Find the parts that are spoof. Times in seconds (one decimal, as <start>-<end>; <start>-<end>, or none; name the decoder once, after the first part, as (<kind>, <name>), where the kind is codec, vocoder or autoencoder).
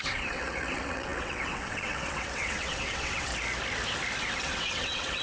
0.0-3.3 (vocoder, WaveNeXt); 4.2-5.2